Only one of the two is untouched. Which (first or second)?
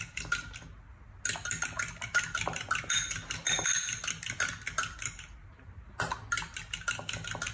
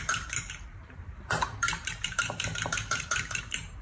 first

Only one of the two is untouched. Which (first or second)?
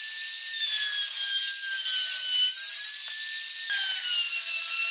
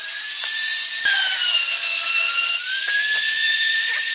first